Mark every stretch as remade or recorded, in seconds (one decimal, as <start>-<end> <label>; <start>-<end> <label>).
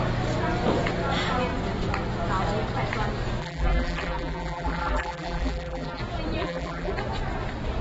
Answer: 0.0-3.4 recorded; 3.4-6.0 remade; 6.0-6.4 recorded; 6.4-6.9 remade; 6.9-7.8 recorded